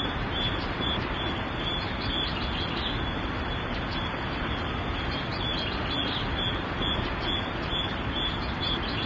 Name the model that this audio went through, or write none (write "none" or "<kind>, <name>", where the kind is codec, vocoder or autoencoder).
none